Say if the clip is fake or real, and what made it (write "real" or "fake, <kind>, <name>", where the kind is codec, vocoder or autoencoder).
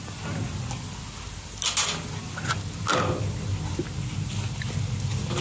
real